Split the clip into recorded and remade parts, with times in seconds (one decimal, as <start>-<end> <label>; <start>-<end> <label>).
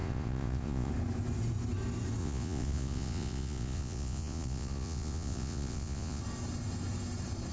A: 0.0-0.9 remade; 0.9-2.2 recorded; 2.2-6.2 remade; 6.2-7.5 recorded